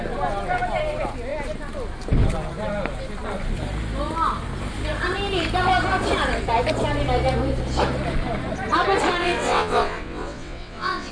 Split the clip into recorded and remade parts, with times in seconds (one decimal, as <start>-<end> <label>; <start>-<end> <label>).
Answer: 0.0-9.2 recorded; 9.2-11.1 remade